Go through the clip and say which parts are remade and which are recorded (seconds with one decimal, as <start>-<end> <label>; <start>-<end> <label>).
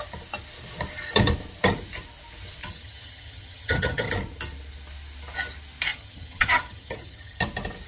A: 0.0-2.6 recorded; 2.6-4.1 remade; 4.1-5.9 recorded; 5.9-7.4 remade; 7.4-7.9 recorded